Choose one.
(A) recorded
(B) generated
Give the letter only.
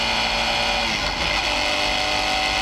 A